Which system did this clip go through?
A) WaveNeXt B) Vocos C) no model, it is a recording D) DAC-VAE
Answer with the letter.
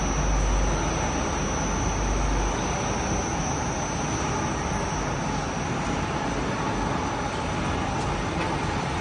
C